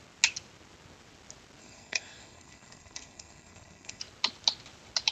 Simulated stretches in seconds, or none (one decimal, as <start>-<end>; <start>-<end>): 1.6-4.0